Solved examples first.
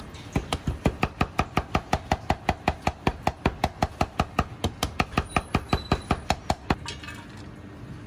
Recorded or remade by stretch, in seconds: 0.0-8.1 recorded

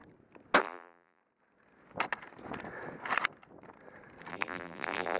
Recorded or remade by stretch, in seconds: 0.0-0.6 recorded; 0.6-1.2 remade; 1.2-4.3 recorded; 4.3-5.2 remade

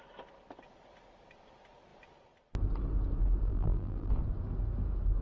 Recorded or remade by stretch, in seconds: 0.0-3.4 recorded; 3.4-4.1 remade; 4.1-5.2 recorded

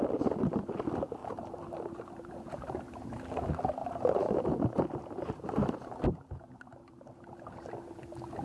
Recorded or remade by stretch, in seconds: 0.0-1.2 recorded; 1.2-3.2 remade; 3.2-3.8 recorded; 3.8-7.5 remade; 7.5-8.4 recorded

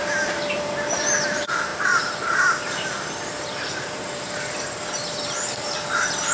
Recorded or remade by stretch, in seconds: 0.0-6.3 remade